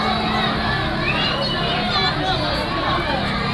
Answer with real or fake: real